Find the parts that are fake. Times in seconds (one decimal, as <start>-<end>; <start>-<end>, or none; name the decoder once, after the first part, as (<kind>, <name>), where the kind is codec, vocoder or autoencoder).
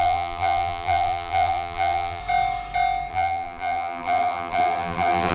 0.0-2.2 (vocoder, BigVGAN v2); 3.1-5.3